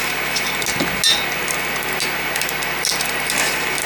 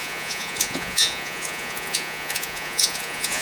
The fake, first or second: second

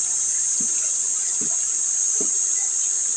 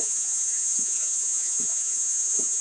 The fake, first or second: second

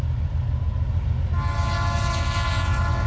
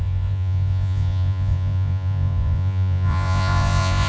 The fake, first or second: second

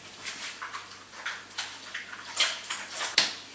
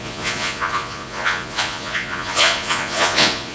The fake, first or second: second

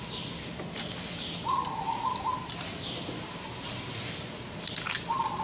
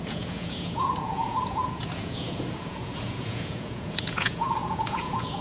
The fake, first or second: second